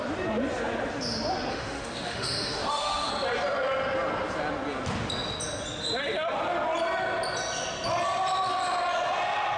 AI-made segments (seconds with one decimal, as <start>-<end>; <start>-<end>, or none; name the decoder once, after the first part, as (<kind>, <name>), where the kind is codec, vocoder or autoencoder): 1.5-3.1 (autoencoder, DAC-VAE)